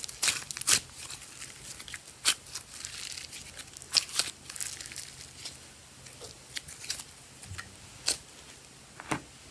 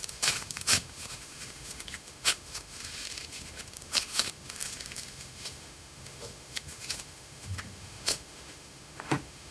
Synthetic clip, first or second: second